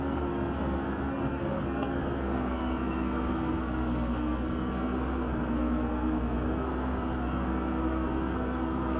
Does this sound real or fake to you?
fake